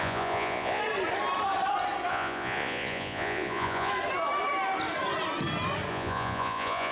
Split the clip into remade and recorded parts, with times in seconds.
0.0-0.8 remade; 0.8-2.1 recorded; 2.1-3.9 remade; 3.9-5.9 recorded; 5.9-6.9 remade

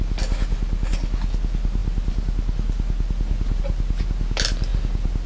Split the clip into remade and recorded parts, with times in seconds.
0.0-5.3 recorded

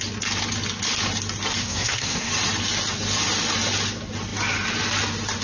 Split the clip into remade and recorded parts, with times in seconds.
0.0-1.6 recorded; 1.6-2.3 remade; 2.3-5.4 recorded

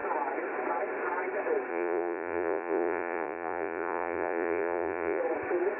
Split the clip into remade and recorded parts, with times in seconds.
0.0-1.7 recorded; 1.7-5.2 remade; 5.2-5.8 recorded

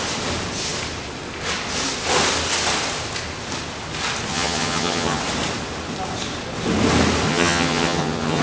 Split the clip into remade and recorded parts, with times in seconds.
0.0-4.3 recorded; 4.3-5.2 remade; 5.2-7.3 recorded; 7.3-8.4 remade